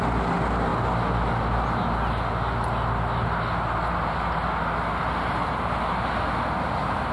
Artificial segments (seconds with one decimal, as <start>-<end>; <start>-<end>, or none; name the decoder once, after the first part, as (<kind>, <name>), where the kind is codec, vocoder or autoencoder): none